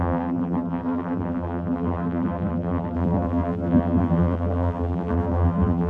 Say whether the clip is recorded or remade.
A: remade